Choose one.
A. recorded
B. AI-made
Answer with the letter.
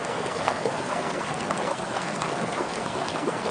B